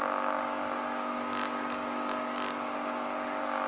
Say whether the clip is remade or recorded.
remade